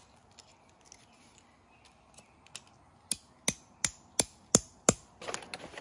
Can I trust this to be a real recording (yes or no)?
yes